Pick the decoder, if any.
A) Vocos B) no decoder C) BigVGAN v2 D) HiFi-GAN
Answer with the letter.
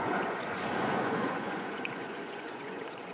A